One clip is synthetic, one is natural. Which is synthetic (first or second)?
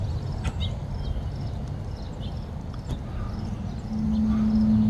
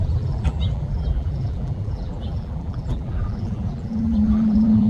second